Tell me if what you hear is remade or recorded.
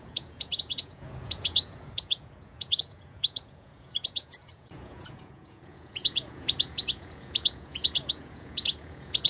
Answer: remade